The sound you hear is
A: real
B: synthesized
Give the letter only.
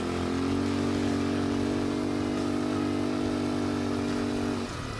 A